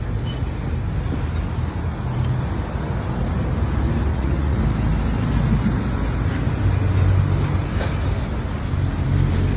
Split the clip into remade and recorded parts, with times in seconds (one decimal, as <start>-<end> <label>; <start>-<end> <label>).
0.0-4.1 recorded; 4.1-4.6 remade; 4.6-9.6 recorded